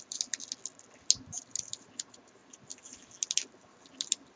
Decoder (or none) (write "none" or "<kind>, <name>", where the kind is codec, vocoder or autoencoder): none